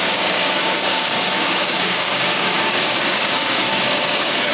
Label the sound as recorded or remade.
remade